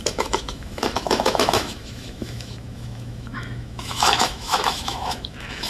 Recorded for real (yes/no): no